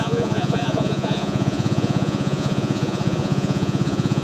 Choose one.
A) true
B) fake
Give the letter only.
B